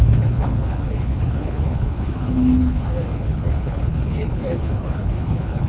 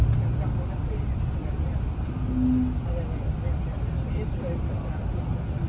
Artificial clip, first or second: first